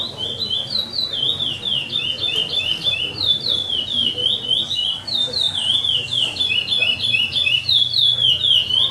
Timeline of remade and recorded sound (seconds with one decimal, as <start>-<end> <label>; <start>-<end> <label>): 0.0-2.4 recorded; 2.4-3.5 remade; 3.5-4.0 recorded; 4.0-7.6 remade; 7.6-8.9 recorded